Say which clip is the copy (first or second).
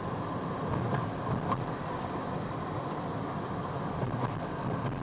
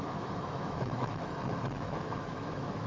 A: second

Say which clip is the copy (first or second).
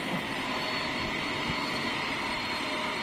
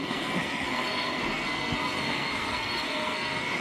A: second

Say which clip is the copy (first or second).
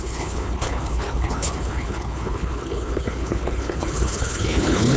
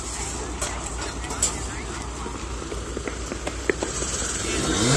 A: first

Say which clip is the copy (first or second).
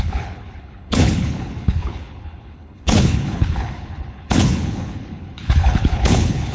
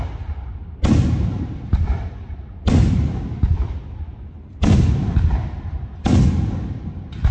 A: first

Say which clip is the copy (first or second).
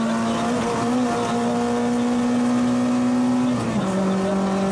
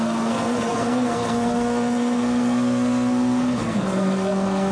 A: second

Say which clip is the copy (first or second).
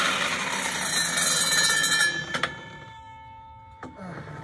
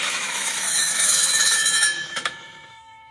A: second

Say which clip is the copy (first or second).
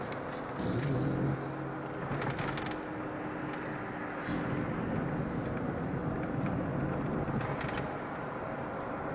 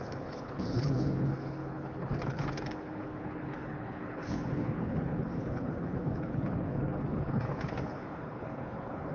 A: second